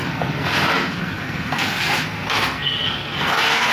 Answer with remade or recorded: remade